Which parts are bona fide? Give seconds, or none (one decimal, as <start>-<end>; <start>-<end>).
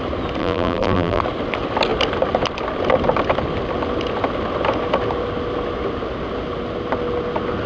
0.0-0.4; 1.2-7.7